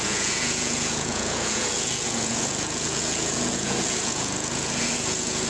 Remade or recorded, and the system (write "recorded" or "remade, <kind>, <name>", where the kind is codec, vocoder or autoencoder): remade, vocoder, Vocos